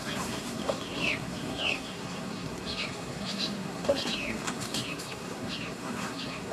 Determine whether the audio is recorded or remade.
remade